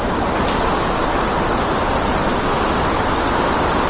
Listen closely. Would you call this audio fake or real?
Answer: real